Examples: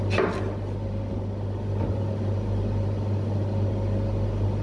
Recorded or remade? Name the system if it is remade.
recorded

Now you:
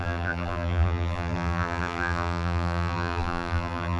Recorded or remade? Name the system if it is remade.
remade, vocoder, BigVGAN v2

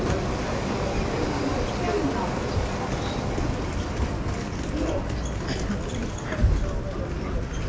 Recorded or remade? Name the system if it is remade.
recorded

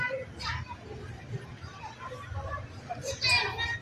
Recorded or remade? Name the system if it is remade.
recorded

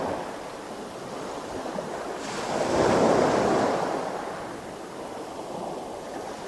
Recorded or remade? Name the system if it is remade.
recorded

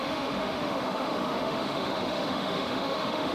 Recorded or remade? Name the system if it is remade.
remade, autoencoder, DAC-VAE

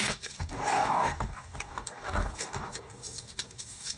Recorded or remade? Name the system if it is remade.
remade, codec, DAC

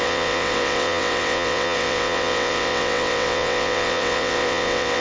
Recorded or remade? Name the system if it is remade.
remade, vocoder, WaveNeXt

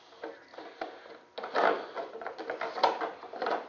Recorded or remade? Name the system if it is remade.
recorded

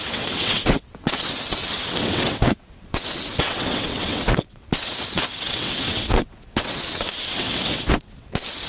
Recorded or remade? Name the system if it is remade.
remade, vocoder, WaveNeXt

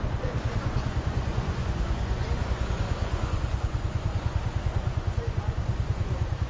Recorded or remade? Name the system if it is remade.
remade, vocoder, Vocos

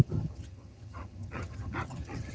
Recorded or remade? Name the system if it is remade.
remade, vocoder, HiFi-GAN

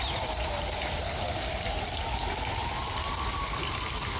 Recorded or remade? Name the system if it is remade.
recorded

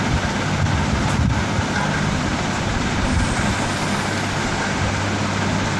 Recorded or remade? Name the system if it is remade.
recorded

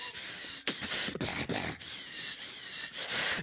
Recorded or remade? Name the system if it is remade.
recorded